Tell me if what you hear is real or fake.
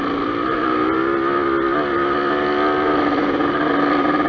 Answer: real